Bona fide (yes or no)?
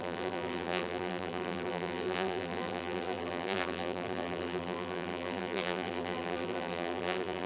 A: no